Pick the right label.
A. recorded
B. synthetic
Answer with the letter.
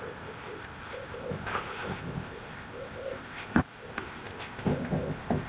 B